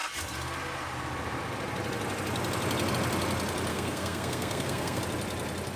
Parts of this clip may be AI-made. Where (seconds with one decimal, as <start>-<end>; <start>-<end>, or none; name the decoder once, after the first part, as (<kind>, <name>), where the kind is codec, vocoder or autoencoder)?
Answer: 3.7-5.0 (codec, SNAC)